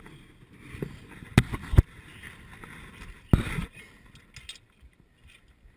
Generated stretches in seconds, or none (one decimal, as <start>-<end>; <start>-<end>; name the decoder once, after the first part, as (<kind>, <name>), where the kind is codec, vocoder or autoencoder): none

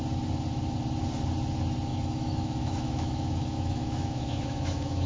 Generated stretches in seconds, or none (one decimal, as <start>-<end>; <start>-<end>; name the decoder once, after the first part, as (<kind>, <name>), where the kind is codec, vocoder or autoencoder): 1.9-5.1 (autoencoder, DAC-VAE)

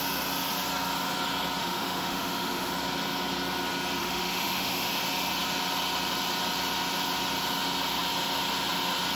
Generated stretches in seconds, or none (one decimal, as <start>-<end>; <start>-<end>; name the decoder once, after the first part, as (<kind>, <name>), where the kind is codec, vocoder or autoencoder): 1.6-2.7 (autoencoder, DAC-VAE); 4.0-4.9

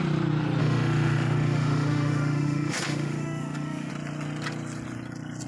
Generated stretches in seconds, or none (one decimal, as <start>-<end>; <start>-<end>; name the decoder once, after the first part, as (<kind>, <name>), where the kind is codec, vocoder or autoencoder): 0.6-3.9 (autoencoder, DAC-VAE)

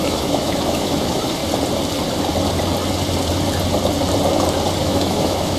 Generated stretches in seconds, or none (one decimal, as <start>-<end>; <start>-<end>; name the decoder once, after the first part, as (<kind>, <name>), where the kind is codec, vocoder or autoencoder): 0.0-1.4 (autoencoder, DAC-VAE); 4.8-5.6

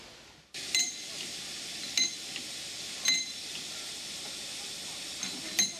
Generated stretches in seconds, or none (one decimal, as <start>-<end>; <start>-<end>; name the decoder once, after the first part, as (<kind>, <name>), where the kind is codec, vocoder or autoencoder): none